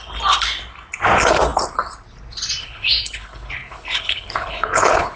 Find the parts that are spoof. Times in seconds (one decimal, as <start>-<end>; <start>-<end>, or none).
2.6-5.2